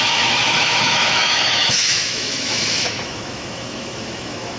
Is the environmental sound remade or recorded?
remade